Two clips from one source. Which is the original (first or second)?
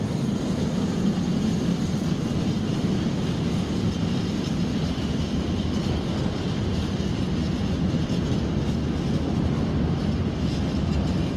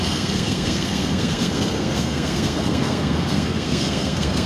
first